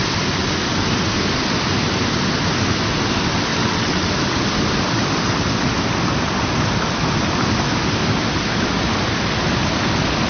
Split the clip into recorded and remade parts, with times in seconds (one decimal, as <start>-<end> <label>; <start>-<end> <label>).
0.0-3.5 recorded; 3.5-4.1 remade; 4.1-10.3 recorded